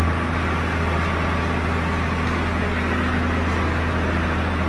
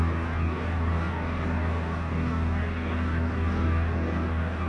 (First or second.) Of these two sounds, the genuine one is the first